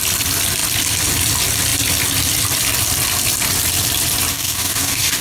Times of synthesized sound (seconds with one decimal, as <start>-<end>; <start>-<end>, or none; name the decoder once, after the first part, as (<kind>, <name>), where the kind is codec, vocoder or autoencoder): 4.3-5.2 (codec, DAC)